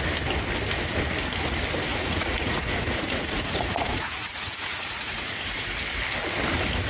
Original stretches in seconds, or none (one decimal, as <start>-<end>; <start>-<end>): 0.0-1.9; 5.7-6.9